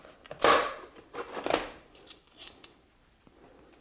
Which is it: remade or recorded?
remade